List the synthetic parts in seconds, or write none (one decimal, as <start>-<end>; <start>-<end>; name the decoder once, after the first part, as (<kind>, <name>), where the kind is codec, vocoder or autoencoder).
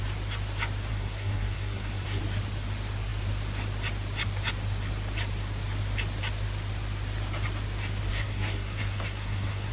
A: 0.9-2.2 (codec, SNAC); 8.1-9.7